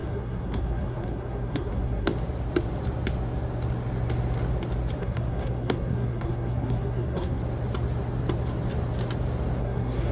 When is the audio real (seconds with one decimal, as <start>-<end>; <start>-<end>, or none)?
2.1-5.0; 7.4-9.6